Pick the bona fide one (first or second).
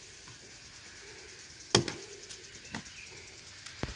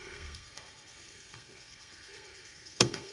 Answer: first